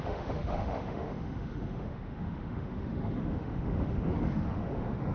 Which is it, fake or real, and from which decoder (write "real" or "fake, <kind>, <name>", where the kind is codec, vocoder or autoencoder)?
fake, autoencoder, DAC-VAE